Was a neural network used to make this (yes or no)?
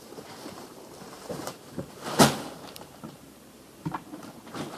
yes